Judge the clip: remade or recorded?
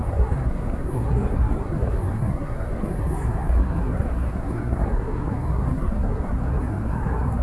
remade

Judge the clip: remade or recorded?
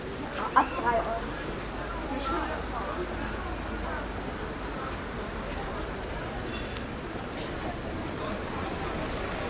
recorded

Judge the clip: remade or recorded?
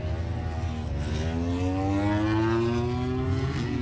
recorded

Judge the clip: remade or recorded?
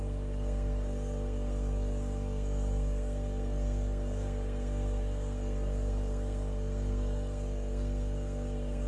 remade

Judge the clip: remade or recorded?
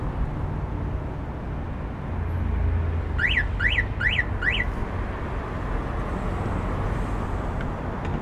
recorded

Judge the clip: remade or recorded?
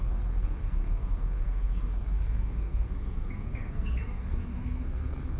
remade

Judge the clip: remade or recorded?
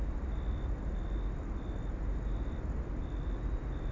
recorded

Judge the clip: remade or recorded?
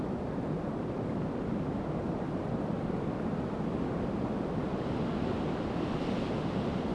recorded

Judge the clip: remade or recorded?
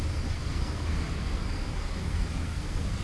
remade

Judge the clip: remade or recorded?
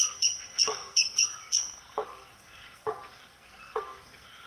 remade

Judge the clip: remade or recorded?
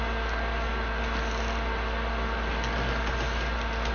recorded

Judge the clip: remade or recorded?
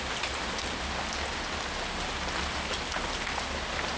recorded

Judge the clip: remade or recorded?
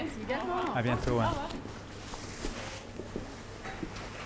recorded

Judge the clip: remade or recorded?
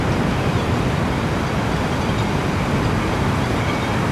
recorded